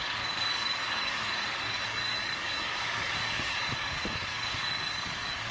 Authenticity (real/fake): fake